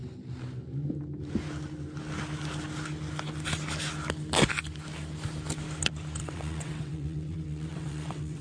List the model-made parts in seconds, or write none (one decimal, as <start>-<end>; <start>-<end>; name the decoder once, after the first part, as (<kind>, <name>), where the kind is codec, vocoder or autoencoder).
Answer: 6.2-8.4 (vocoder, WaveNeXt)